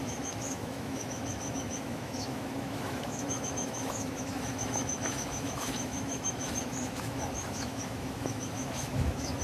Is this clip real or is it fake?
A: fake